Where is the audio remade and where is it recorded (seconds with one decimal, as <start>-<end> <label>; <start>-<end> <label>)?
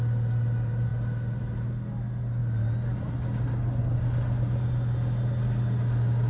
0.0-6.3 recorded